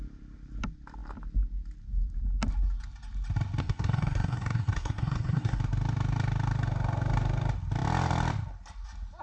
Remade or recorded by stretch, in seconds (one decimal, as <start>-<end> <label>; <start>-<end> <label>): 0.0-3.6 recorded; 3.6-5.6 remade; 5.6-9.2 recorded